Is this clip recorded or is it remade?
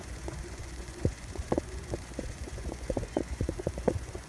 remade